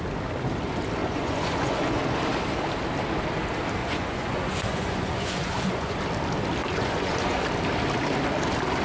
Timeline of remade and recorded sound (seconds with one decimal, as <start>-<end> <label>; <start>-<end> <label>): 0.0-1.0 recorded; 1.0-2.0 remade; 2.0-3.8 recorded; 3.8-6.0 remade; 6.0-6.6 recorded; 6.6-7.4 remade; 7.4-8.8 recorded